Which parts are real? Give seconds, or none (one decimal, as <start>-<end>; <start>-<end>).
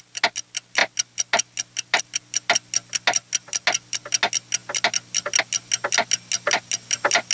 0.0-7.3